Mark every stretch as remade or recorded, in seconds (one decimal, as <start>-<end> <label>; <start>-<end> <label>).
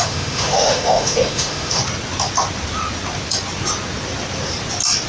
0.0-1.8 remade; 1.8-5.1 recorded